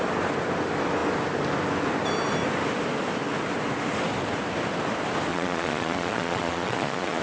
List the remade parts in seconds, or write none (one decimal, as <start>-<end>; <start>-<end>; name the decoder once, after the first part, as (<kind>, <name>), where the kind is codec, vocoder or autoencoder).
5.3-7.2 (vocoder, Vocos)

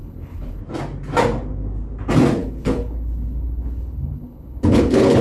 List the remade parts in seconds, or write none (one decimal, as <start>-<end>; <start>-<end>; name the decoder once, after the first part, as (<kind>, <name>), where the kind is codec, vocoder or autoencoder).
0.0-0.6 (codec, HILCodec); 2.4-5.2